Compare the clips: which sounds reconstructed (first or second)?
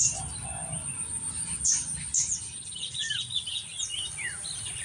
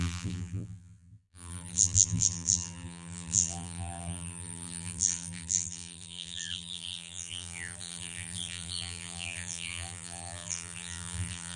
second